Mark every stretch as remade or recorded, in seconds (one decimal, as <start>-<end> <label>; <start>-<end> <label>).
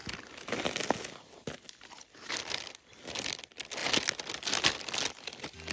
0.0-5.7 recorded